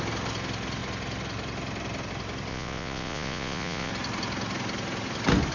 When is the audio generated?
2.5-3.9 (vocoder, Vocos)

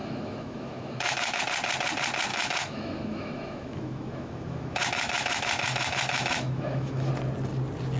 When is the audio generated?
0.0-1.4 (autoencoder, DAC-VAE); 2.3-7.1

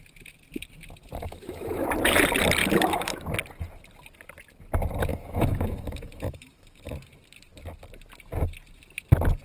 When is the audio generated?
1.2-1.9 (autoencoder, DAC-VAE); 2.6-3.3; 5.1-6.9

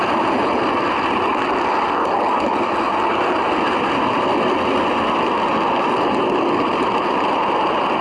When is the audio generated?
none

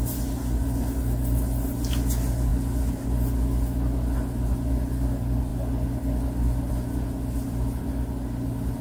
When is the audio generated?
none